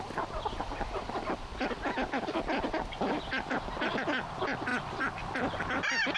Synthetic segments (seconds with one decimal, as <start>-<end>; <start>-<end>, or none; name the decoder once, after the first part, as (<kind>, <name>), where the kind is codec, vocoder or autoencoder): none